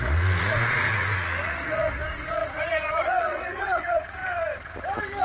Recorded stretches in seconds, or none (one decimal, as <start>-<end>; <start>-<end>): 4.2-5.2